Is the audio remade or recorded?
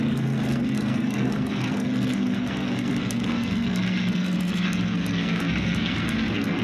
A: remade